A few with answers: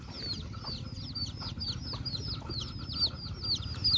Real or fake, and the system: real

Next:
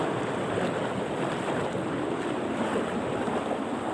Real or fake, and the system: real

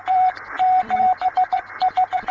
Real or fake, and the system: fake, vocoder, BigVGAN v2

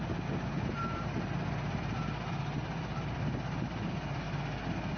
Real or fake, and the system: real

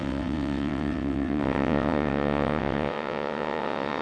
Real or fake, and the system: fake, vocoder, WaveNeXt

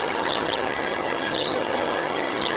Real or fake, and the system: fake, vocoder, HiFi-GAN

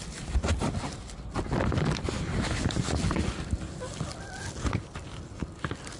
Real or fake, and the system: real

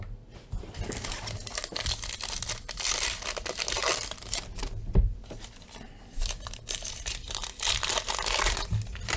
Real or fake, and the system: real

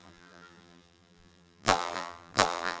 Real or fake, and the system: fake, vocoder, BigVGAN v2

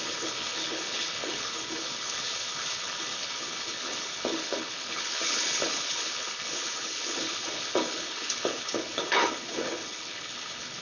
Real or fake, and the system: fake, codec, HILCodec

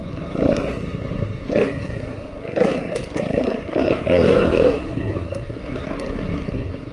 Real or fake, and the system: fake, codec, SNAC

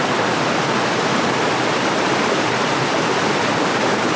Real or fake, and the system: real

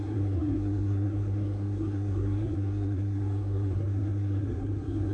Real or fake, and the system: fake, codec, SNAC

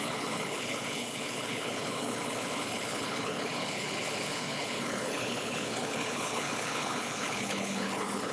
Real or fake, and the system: fake, codec, HILCodec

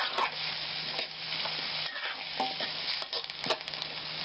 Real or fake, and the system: real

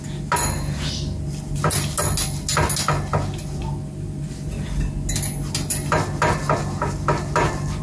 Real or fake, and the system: real